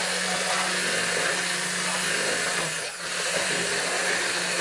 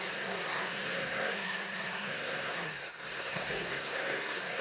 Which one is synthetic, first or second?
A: second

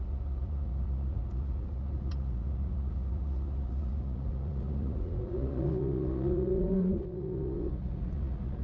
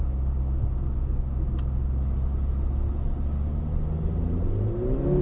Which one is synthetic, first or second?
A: first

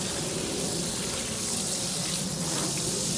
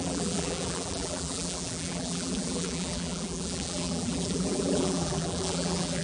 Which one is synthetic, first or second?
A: second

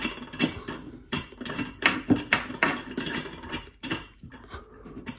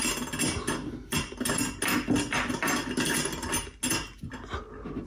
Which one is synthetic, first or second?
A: first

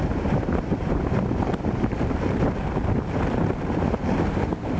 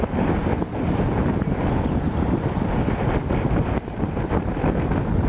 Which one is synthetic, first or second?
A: first